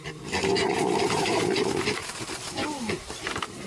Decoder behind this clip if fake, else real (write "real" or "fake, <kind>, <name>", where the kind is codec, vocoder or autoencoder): fake, vocoder, BigVGAN v2